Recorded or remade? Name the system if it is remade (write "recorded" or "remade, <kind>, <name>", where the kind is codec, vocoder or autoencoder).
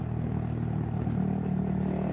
recorded